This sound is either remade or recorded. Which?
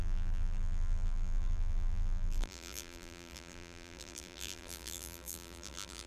remade